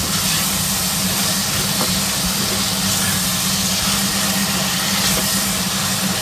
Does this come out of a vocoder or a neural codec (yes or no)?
no